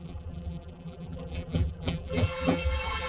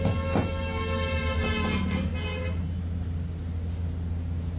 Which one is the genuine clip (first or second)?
second